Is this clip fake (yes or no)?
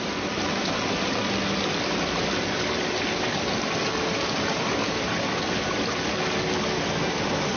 no